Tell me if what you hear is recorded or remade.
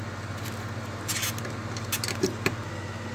recorded